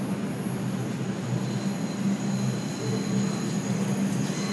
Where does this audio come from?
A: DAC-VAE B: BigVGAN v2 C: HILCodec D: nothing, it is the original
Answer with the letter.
D